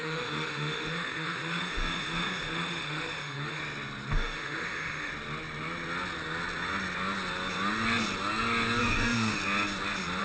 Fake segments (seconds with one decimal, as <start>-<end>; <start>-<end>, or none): 0.0-3.6; 4.1-5.1; 8.8-9.4

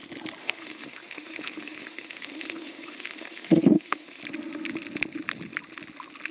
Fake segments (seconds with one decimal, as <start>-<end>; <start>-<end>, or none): 0.4-4.2

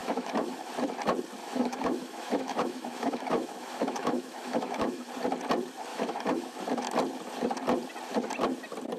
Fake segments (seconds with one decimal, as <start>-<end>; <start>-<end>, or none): 0.0-0.7; 1.4-5.1; 5.9-6.6

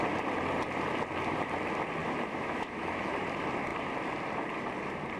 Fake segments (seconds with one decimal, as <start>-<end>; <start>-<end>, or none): 2.0-3.1

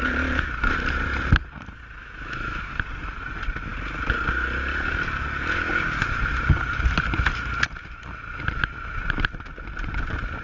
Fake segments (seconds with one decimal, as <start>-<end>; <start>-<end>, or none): 2.0-2.7

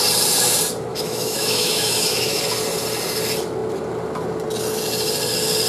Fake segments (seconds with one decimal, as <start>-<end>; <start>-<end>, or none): 0.9-2.4